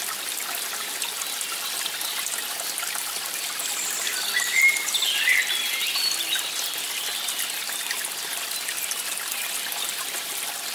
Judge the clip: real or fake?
real